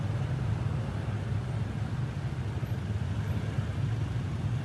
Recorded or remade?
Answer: recorded